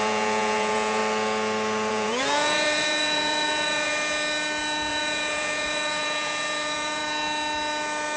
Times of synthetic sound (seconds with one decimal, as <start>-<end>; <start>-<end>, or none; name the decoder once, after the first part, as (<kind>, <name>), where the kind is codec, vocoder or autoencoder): 0.0-1.0 (vocoder, Vocos); 1.9-3.9; 4.9-7.0